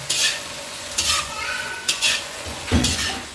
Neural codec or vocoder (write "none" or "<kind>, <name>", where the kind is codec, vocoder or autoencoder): vocoder, Vocos